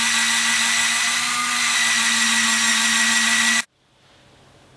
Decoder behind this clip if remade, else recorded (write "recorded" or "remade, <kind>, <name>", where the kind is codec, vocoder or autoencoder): recorded